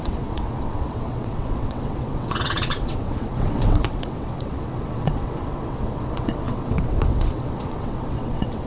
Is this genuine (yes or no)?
no